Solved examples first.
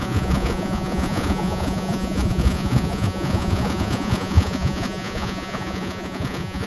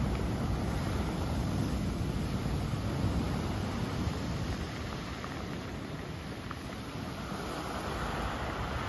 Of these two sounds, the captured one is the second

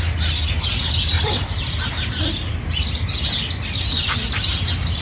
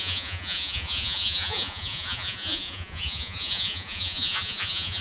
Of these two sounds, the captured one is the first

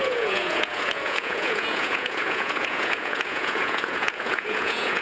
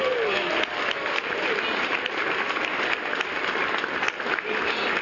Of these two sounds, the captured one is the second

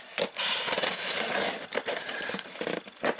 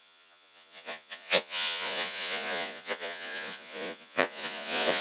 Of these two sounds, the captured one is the first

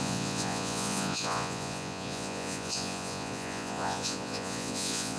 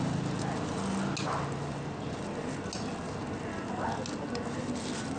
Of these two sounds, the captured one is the second